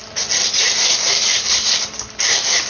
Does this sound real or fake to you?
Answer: fake